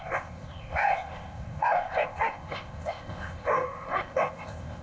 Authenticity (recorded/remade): remade